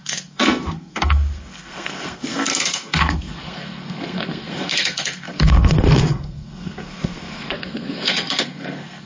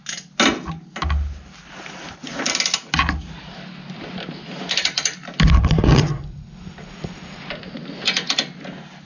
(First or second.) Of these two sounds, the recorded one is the second